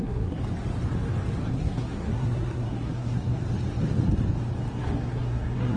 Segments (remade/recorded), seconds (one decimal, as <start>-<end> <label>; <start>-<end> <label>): 0.0-0.4 remade; 0.4-1.5 recorded; 1.5-3.4 remade; 3.4-4.8 recorded; 4.8-5.8 remade